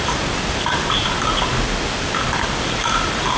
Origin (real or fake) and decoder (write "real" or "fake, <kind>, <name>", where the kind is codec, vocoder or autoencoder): real